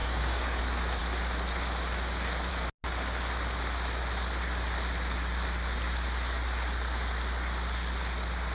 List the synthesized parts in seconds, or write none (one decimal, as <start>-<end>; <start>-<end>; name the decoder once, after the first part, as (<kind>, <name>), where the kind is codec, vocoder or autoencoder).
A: 0.0-0.6 (codec, DAC)